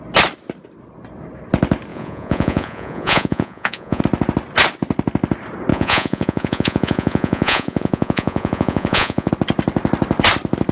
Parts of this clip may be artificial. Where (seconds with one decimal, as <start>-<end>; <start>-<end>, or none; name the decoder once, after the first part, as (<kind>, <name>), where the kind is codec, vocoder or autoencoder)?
1.9-4.0 (vocoder, Vocos); 5.7-9.3

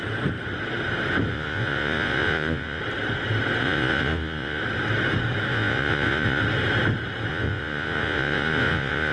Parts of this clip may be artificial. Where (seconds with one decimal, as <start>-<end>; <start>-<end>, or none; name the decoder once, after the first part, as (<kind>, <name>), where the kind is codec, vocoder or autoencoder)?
1.3-2.8 (vocoder, Vocos); 3.6-4.6; 5.5-6.4; 7.3-9.1